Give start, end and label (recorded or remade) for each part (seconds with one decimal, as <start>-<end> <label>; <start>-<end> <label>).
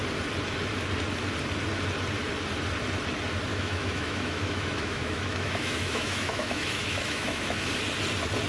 0.0-3.5 recorded; 3.5-7.7 remade; 7.7-8.5 recorded